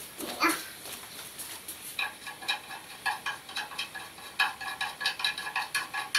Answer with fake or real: real